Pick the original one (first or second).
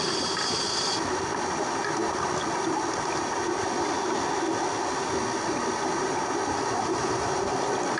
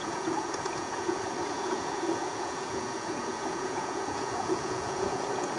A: first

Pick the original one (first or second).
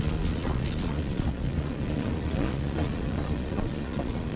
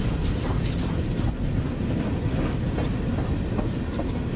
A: second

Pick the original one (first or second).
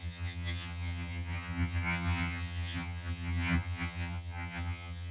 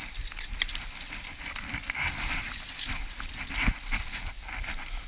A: second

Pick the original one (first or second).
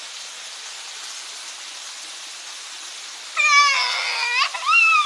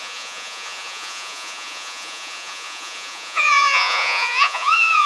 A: first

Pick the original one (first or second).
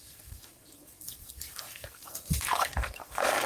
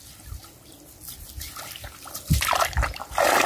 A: second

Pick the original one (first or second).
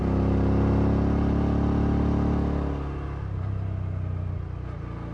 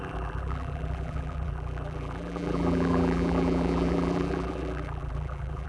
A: first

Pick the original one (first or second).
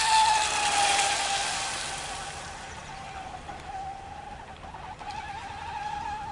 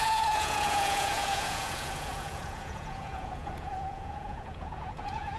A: first